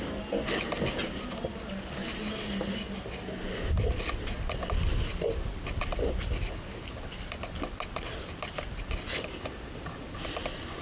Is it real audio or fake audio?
real